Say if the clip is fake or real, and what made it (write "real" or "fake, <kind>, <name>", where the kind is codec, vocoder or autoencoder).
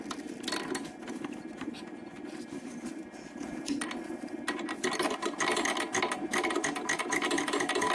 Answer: real